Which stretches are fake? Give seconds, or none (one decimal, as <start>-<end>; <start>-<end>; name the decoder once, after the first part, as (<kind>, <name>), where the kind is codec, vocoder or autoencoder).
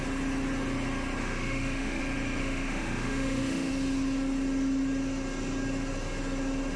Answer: 1.2-2.0 (autoencoder, DAC-VAE); 2.4-3.7